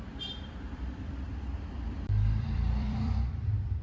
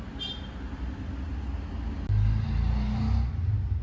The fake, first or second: first